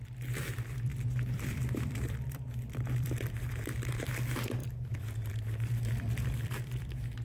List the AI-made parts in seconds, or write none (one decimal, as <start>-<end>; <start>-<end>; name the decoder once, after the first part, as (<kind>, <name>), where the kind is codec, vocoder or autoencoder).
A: 0.0-7.2 (vocoder, BigVGAN v2)